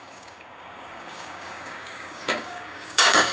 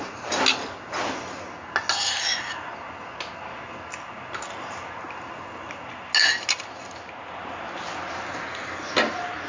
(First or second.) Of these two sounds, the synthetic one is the first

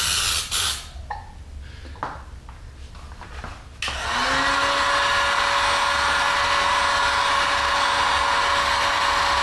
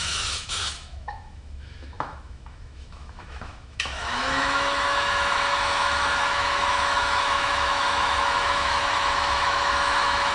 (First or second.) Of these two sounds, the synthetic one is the second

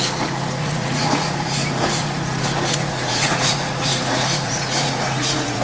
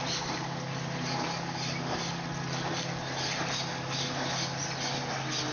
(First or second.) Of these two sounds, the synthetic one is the first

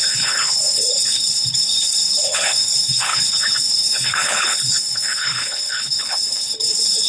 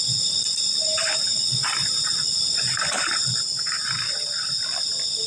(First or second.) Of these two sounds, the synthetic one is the first